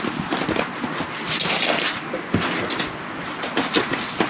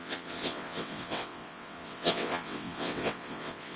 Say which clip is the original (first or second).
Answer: first